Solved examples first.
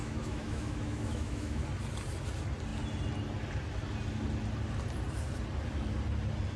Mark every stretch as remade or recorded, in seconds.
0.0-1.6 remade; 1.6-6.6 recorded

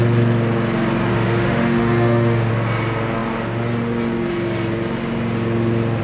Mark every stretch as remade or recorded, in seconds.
0.0-1.1 recorded; 1.1-2.5 remade; 2.5-6.0 recorded

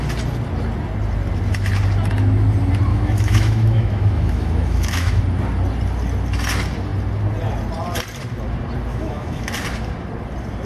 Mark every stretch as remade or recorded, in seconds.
0.0-2.9 recorded; 2.9-5.2 remade; 5.2-8.9 recorded; 8.9-9.5 remade; 9.5-10.7 recorded

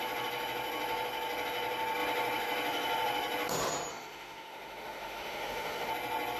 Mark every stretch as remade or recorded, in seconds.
0.0-3.9 recorded; 3.9-5.9 remade; 5.9-6.4 recorded

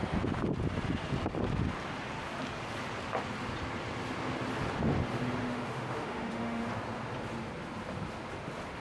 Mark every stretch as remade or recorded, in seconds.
0.0-5.4 recorded; 5.4-6.7 remade; 6.7-8.8 recorded

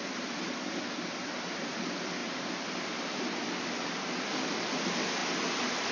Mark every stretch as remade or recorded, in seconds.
0.0-5.9 recorded

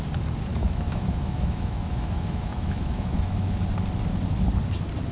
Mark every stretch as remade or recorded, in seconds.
0.0-0.5 recorded; 0.5-3.6 remade; 3.6-5.1 recorded

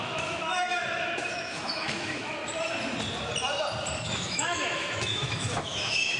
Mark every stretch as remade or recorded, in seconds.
0.0-2.4 remade; 2.4-4.0 recorded; 4.0-6.2 remade